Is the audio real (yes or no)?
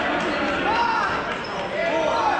yes